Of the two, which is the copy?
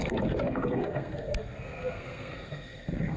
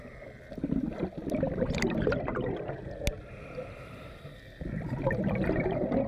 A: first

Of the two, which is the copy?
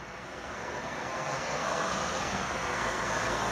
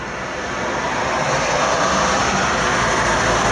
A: first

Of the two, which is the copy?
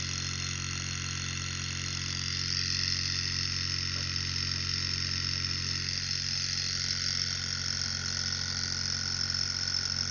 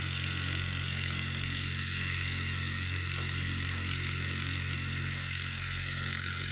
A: second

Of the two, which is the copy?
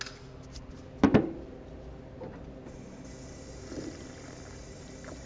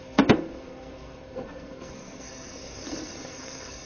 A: second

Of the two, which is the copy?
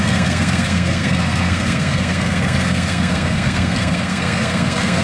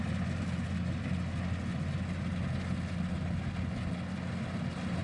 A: first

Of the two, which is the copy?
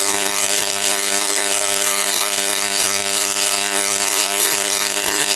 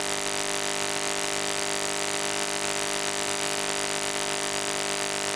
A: first